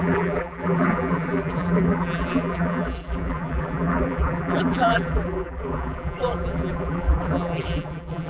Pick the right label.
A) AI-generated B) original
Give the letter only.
A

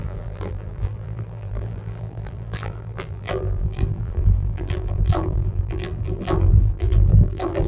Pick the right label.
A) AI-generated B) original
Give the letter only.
A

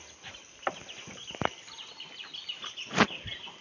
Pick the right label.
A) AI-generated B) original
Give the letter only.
B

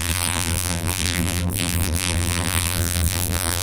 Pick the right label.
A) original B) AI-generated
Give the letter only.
B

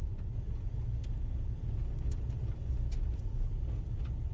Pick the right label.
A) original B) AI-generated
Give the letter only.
A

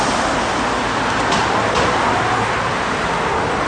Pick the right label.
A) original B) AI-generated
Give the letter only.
A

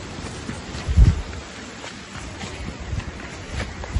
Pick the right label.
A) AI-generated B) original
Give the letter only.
A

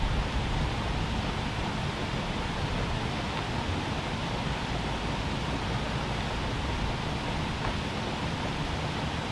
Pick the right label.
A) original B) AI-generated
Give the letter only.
A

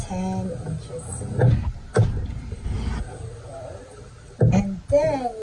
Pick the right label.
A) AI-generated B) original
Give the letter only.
B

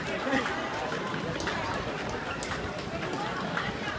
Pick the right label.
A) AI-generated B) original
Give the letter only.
B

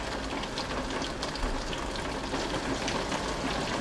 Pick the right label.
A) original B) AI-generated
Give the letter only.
A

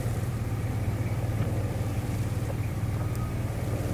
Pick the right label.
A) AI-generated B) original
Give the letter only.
A